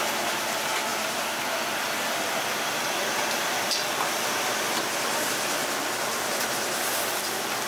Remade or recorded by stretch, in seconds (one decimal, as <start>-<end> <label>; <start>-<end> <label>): 0.0-7.7 recorded